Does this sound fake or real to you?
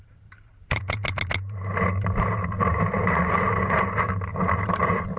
fake